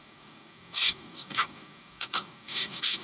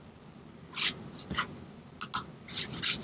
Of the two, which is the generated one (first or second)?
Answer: first